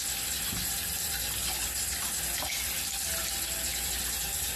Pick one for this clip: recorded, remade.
recorded